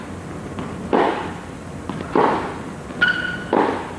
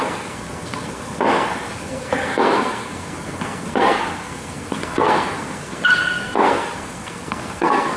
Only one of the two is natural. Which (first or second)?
first